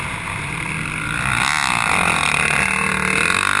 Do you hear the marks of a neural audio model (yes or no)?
no